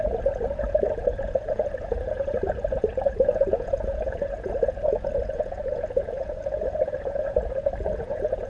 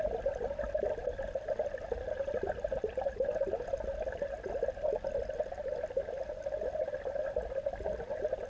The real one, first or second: second